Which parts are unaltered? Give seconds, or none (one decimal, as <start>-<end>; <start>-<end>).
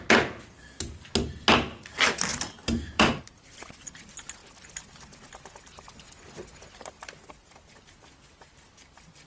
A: 0.0-2.3; 3.2-9.3